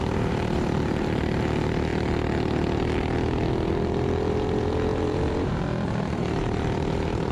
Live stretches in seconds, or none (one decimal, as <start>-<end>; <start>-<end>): 1.9-3.7